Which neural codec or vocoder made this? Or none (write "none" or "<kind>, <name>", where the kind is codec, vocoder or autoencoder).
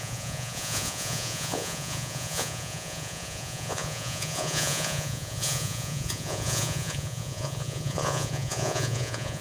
vocoder, Vocos